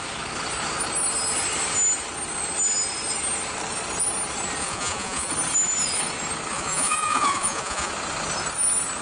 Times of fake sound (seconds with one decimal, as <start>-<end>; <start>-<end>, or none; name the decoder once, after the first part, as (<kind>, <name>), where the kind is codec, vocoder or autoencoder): 4.6-5.3 (vocoder, Vocos); 6.5-7.9